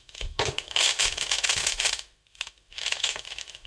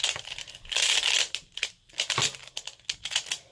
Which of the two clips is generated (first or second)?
first